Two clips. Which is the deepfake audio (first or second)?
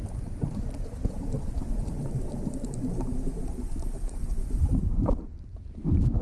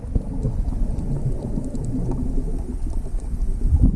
first